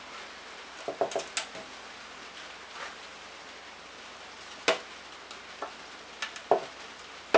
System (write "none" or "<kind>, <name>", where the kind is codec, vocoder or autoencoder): none